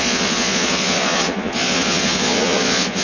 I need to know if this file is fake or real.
fake